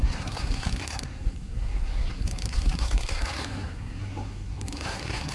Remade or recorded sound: remade